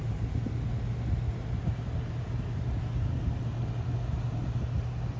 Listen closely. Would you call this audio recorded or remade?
recorded